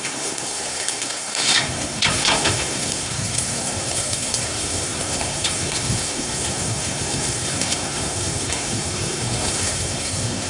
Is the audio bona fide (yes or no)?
no